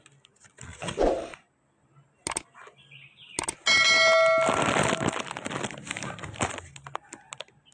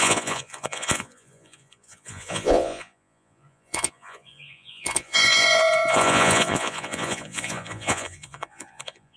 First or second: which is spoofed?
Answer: second